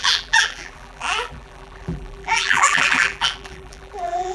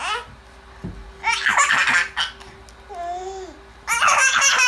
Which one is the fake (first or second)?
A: first